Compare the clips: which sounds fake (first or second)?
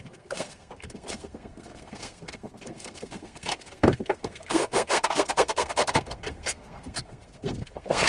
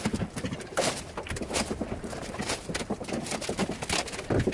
first